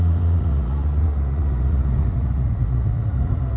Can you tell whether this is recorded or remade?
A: remade